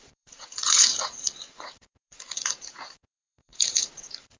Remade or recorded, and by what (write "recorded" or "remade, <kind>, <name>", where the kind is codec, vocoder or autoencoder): remade, vocoder, Vocos